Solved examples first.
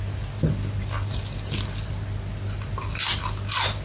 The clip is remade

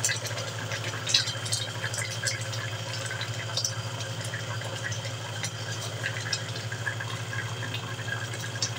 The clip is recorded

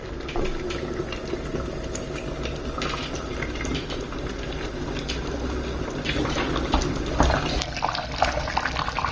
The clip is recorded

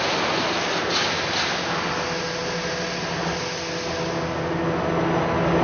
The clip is recorded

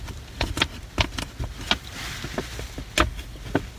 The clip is recorded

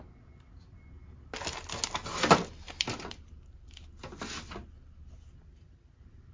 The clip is recorded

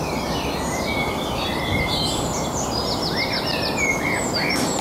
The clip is recorded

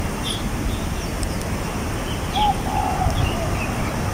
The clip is recorded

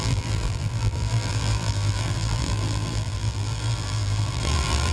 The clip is remade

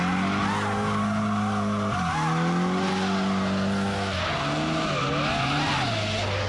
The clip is recorded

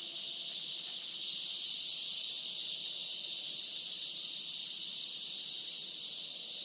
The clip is recorded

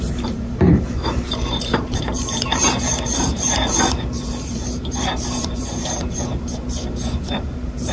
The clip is remade